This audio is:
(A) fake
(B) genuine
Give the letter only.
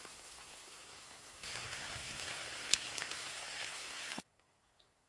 A